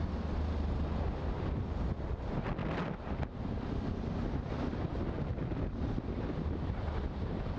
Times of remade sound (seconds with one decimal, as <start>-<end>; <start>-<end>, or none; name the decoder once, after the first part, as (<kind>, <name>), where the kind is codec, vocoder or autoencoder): none